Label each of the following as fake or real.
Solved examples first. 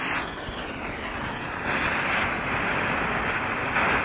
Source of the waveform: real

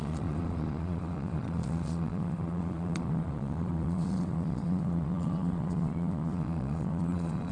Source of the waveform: fake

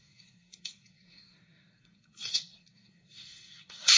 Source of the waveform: fake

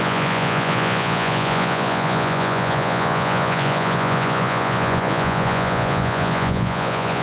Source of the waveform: fake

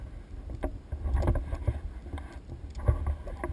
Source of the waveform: real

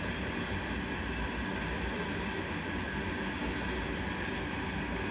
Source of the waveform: real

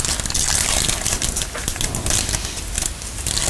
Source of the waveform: real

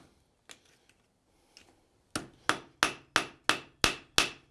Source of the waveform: real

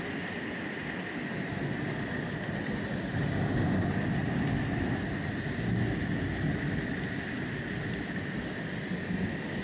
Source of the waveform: real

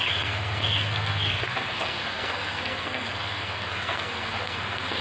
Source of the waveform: fake